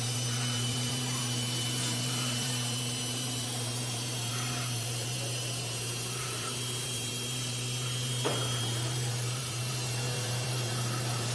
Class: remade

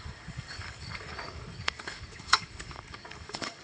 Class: remade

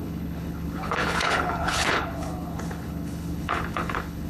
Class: remade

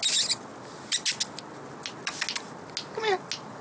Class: recorded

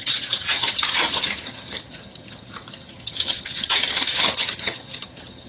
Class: remade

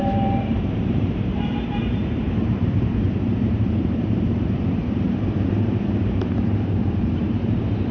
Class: remade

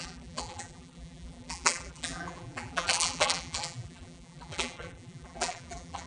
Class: remade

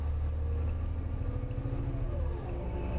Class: recorded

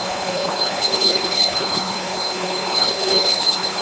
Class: remade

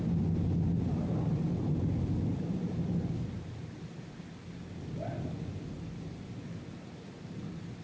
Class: recorded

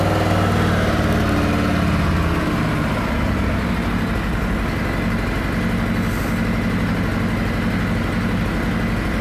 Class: recorded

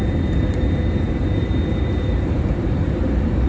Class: remade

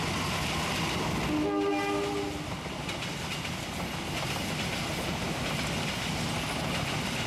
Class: recorded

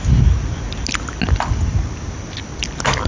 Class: recorded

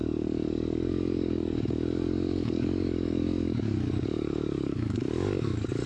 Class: remade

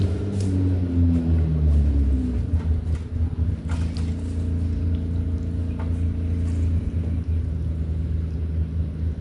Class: recorded